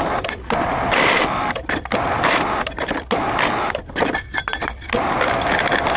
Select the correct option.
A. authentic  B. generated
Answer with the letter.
A